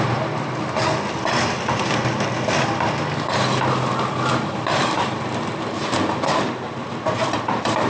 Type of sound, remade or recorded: remade